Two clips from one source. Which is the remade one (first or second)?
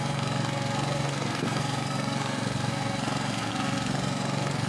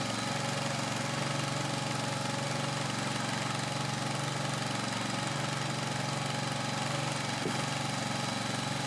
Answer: first